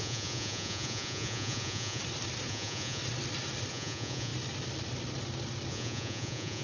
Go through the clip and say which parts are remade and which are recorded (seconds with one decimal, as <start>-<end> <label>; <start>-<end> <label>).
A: 0.0-2.0 remade; 2.0-2.5 recorded; 2.5-3.0 remade; 3.0-3.7 recorded; 3.7-4.3 remade; 4.3-5.7 recorded; 5.7-6.6 remade